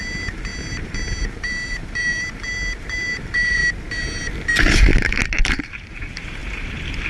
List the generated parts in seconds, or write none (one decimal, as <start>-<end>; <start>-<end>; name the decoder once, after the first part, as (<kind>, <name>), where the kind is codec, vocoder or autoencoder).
0.0-3.6 (vocoder, BigVGAN v2); 5.4-7.1